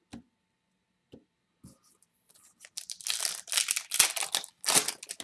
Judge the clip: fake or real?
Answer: real